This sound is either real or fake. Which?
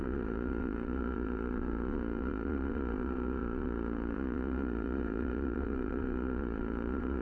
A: fake